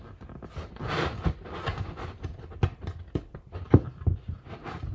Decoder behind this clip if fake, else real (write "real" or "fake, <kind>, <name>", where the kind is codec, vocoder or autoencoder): real